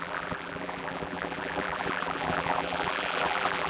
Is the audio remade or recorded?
remade